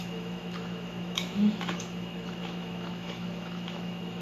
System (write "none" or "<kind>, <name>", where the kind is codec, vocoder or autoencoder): autoencoder, DAC-VAE